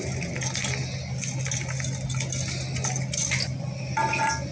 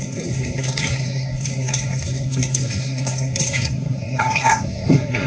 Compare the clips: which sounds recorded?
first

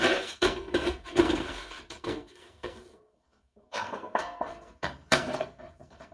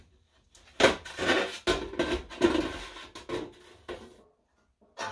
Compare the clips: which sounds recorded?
second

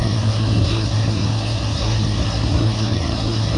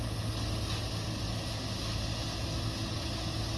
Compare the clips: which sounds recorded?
second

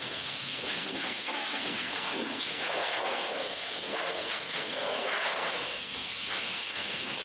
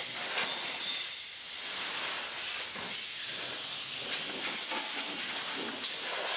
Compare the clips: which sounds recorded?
second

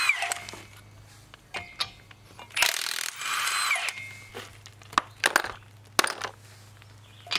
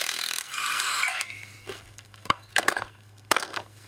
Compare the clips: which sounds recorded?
first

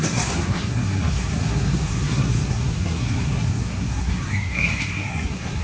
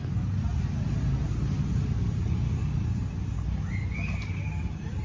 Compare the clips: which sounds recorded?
second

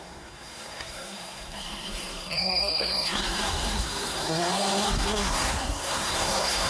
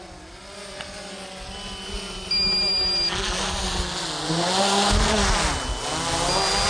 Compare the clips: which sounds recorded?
second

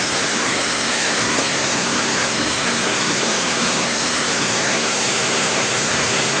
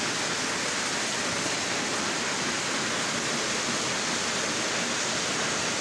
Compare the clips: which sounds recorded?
second